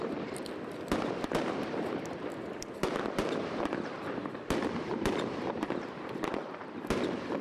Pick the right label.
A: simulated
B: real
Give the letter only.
A